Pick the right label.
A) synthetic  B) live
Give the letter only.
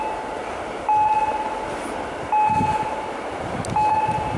B